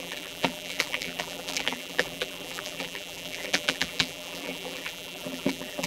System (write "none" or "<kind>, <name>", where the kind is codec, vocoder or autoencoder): vocoder, BigVGAN v2